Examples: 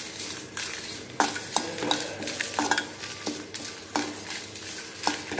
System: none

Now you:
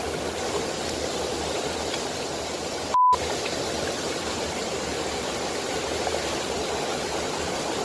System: none